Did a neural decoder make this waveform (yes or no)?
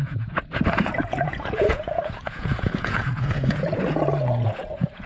yes